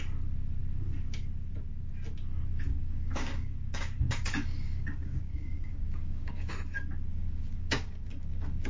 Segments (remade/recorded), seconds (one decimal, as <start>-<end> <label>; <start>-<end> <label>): 0.0-2.7 recorded; 2.7-6.5 remade; 6.5-7.1 recorded; 7.1-8.7 remade